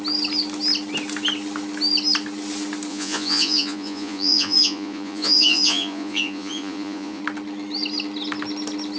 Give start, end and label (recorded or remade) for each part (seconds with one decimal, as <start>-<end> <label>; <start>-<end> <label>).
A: 0.0-2.9 recorded; 2.9-7.2 remade; 7.2-9.0 recorded

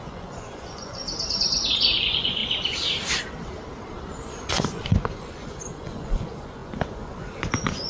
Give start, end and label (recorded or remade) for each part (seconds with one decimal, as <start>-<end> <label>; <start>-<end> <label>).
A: 0.0-1.0 remade; 1.0-2.0 recorded; 2.0-2.4 remade; 2.4-4.5 recorded; 4.5-7.9 remade

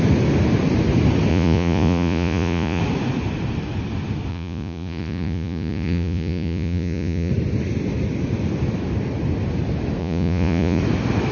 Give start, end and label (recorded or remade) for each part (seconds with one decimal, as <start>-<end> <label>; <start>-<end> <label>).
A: 0.0-1.3 recorded; 1.3-2.8 remade; 2.8-4.3 recorded; 4.3-7.3 remade; 7.3-10.0 recorded; 10.0-10.8 remade; 10.8-11.3 recorded

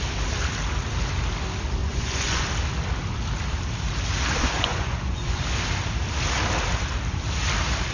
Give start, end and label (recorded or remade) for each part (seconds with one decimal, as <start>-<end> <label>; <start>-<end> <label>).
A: 0.0-1.8 recorded; 1.8-2.4 remade; 2.4-4.4 recorded; 4.4-5.4 remade; 5.4-7.9 recorded